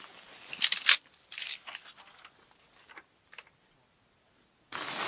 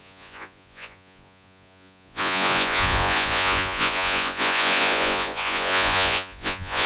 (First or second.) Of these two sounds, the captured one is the first